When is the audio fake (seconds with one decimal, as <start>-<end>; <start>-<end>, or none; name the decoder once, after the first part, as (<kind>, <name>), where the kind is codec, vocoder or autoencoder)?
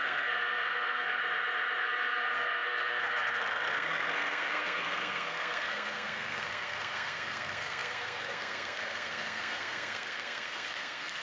0.0-1.2 (codec, SNAC); 1.8-11.2